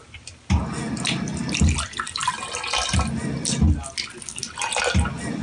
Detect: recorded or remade recorded